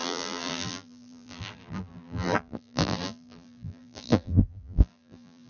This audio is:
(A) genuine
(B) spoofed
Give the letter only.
B